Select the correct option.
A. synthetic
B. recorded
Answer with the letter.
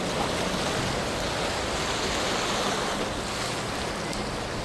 B